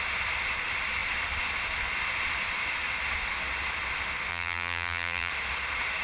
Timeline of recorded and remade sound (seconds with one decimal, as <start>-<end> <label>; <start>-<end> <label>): 0.0-4.3 recorded; 4.3-5.3 remade; 5.3-6.0 recorded